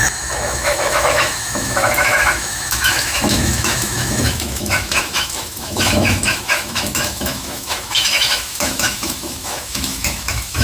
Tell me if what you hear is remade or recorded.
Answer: remade